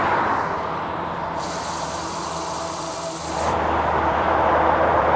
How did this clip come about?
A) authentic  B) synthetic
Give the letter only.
B